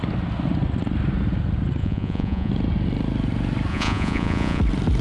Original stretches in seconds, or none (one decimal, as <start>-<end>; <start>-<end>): 0.0-1.8; 2.5-3.7; 4.6-5.0